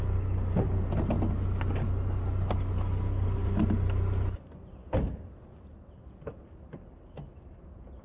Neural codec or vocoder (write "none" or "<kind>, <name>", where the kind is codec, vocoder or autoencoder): none